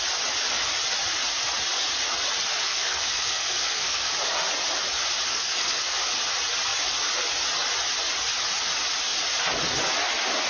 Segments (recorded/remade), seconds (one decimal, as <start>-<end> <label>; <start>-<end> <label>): 0.0-2.5 recorded; 2.5-4.1 remade; 4.1-5.3 recorded; 5.3-6.0 remade; 6.0-10.5 recorded